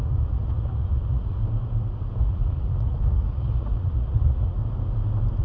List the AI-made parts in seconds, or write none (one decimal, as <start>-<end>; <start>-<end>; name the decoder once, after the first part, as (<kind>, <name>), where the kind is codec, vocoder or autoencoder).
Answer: 0.0-1.4 (vocoder, Vocos); 2.2-4.6